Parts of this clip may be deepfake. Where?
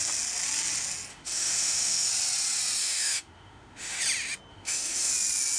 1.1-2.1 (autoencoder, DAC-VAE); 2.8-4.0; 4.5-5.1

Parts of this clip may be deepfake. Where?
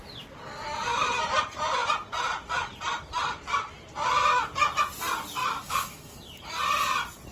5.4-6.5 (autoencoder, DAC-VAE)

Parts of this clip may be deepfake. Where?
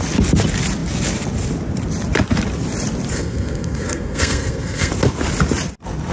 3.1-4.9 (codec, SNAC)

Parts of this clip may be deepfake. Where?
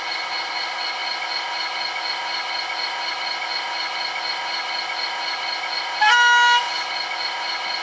none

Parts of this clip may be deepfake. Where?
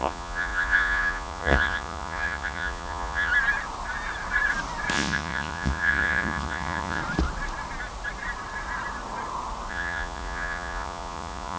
0.0-3.3 (vocoder, Vocos); 4.9-7.0; 9.7-11.6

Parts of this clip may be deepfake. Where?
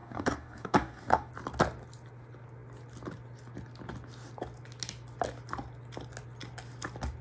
0.0-1.3 (codec, DAC)